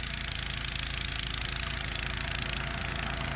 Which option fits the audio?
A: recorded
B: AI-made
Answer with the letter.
A